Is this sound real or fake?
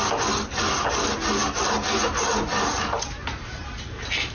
real